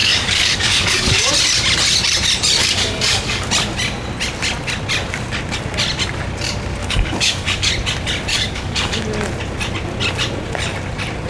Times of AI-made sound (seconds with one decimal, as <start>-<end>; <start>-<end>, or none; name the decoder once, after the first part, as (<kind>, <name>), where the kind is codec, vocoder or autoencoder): 0.0-1.3 (codec, DAC); 2.6-3.5; 6.8-7.7; 8.3-9.0

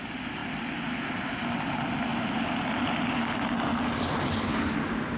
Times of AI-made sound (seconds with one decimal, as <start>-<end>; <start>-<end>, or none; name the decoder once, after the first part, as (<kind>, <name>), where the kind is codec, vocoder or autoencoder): 2.1-2.8 (vocoder, BigVGAN v2)

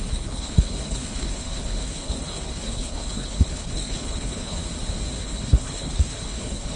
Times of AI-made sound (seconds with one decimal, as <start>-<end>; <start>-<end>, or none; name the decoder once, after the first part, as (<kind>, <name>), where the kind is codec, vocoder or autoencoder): 0.0-4.6 (codec, HILCodec); 5.2-6.8

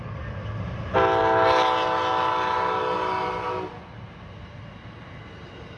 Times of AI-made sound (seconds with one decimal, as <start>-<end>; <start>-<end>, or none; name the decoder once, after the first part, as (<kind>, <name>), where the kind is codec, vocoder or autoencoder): none